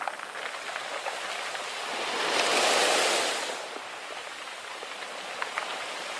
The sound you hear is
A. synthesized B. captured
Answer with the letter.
B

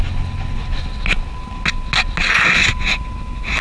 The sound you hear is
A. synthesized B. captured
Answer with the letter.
B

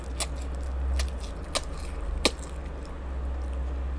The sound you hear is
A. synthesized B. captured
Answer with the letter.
B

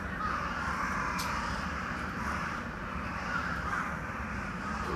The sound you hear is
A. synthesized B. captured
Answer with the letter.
A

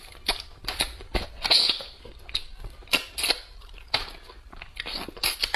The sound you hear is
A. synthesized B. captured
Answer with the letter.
B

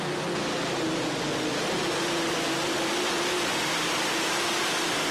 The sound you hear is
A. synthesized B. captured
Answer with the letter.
B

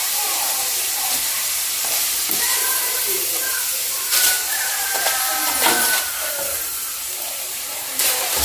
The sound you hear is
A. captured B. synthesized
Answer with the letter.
B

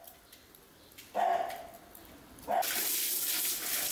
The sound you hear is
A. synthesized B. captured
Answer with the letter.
B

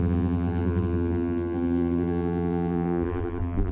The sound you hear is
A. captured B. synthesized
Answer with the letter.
B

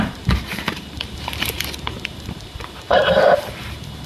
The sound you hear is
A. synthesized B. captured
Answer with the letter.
A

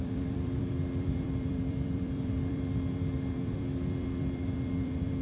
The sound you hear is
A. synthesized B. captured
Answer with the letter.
A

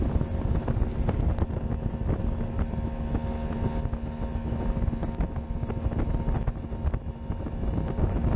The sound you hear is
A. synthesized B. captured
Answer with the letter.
B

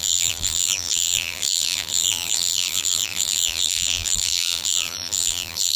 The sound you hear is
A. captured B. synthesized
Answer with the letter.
B